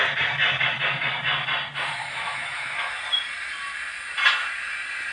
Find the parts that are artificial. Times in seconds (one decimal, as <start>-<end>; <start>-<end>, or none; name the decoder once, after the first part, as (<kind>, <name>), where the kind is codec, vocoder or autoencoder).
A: 2.0-2.9 (autoencoder, DAC-VAE)